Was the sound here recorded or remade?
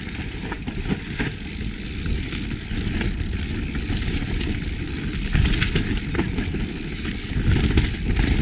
recorded